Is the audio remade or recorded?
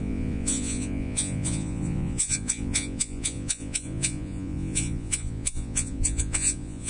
remade